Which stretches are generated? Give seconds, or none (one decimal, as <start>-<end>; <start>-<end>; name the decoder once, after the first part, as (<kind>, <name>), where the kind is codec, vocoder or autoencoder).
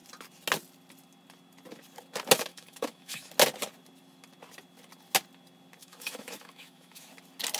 2.5-3.3 (autoencoder, DAC-VAE); 5.8-7.1